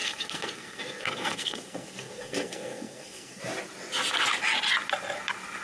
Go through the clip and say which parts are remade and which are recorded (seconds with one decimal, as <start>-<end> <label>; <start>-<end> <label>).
0.0-3.4 remade; 3.4-5.6 recorded